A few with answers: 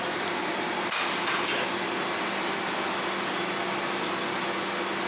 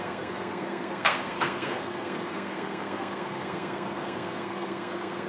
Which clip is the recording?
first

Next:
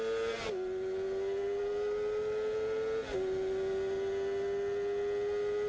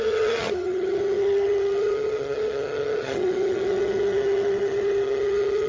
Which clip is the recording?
first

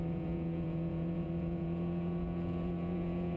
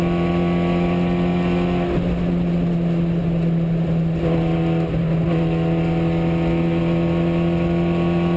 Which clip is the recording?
second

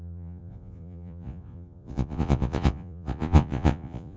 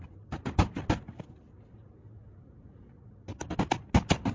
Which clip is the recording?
second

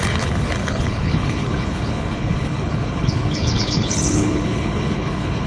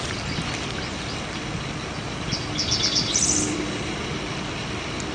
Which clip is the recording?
second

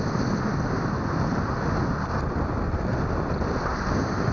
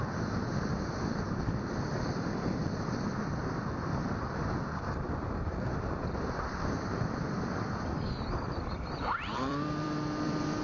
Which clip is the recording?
first